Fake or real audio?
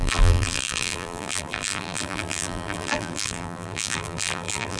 fake